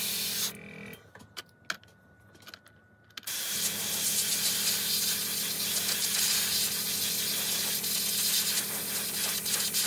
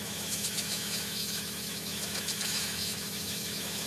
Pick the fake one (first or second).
second